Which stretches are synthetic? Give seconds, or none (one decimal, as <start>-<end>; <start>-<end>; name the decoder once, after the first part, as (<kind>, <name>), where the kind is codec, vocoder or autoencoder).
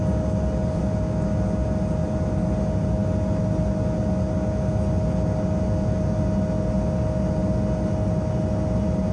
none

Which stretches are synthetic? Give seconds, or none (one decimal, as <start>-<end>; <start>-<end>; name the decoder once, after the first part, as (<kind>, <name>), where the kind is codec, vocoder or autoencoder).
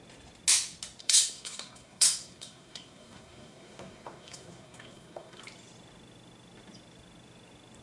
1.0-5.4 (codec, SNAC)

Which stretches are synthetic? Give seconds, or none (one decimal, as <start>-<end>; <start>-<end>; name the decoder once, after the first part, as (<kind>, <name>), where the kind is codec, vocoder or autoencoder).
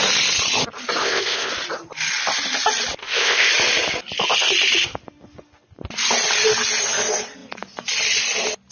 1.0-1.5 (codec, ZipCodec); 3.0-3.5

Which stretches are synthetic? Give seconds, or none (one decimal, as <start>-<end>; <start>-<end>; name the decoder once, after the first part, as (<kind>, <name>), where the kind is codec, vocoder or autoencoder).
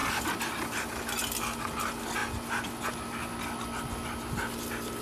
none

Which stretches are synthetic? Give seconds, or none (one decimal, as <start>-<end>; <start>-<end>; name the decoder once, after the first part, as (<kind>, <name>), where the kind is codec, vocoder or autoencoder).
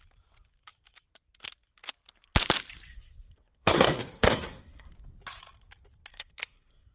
2.9-4.9 (codec, SNAC); 6.1-6.9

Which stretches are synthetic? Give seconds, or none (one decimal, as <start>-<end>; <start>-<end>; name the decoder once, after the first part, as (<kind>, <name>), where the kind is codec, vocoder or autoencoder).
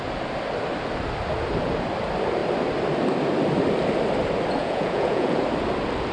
4.6-5.4 (vocoder, Vocos)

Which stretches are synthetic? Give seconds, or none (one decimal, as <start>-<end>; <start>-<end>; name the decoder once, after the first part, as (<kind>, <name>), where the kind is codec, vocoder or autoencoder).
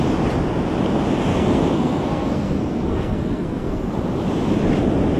1.3-3.9 (codec, SNAC)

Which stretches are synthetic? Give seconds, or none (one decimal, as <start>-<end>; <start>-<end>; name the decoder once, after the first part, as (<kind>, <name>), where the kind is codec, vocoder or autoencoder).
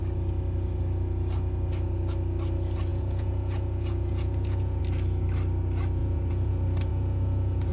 2.9-4.8 (vocoder, Vocos); 6.0-6.5; 6.9-7.7